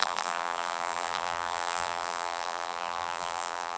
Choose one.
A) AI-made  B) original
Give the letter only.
A